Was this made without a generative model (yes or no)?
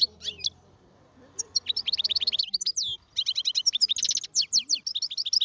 yes